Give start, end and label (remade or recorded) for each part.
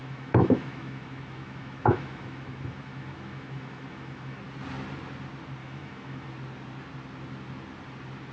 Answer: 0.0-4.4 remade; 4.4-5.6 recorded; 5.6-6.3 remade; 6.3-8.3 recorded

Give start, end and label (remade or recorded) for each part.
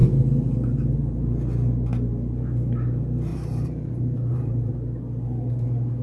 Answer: 0.0-3.3 recorded; 3.3-4.7 remade; 4.7-6.0 recorded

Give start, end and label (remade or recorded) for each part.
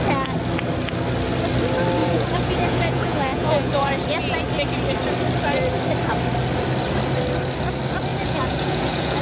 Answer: 0.0-2.0 recorded; 2.0-4.0 remade; 4.0-8.1 recorded; 8.1-9.2 remade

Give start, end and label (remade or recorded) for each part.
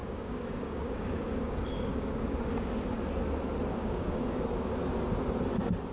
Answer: 0.0-2.7 remade; 2.7-3.7 recorded; 3.7-4.4 remade; 4.4-5.9 recorded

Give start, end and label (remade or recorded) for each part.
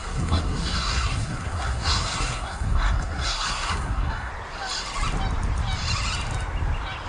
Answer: 0.0-4.3 remade; 4.3-7.1 recorded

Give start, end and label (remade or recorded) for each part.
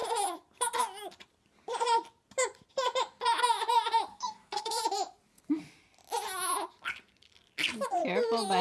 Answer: 0.0-4.1 recorded; 4.1-4.8 remade; 4.8-8.6 recorded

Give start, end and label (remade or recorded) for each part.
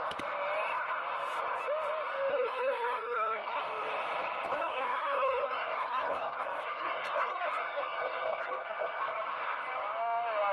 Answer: 0.0-2.3 recorded; 2.3-3.6 remade; 3.6-4.6 recorded; 4.6-9.0 remade; 9.0-10.5 recorded